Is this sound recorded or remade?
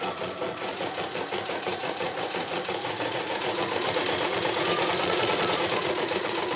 remade